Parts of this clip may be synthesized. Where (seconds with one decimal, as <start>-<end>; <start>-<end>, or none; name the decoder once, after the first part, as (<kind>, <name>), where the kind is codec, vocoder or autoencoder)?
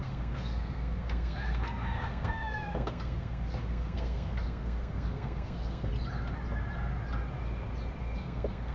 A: 0.0-5.9 (codec, SNAC); 8.0-8.7